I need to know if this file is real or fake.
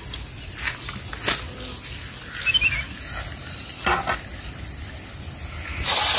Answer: real